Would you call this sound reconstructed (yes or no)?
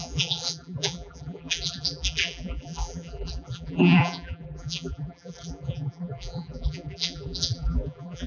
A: yes